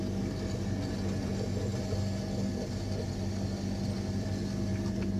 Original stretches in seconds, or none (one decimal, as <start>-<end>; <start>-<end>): 0.0-5.2